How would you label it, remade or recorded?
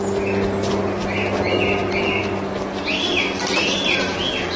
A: recorded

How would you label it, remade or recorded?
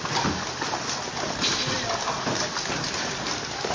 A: recorded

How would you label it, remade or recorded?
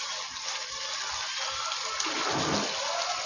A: recorded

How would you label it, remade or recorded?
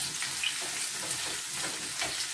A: recorded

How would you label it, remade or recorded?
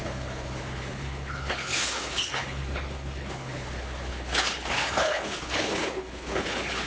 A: remade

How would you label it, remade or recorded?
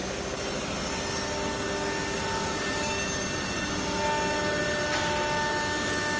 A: recorded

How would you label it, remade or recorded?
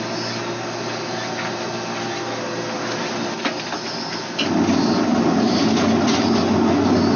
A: recorded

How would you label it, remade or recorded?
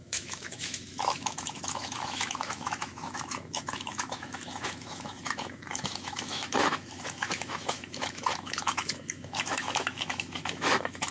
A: remade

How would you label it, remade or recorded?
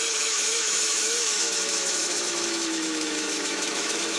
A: remade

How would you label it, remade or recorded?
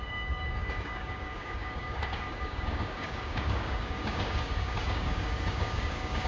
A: remade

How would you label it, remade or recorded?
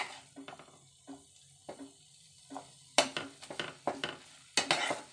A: recorded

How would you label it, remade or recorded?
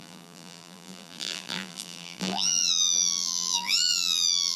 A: remade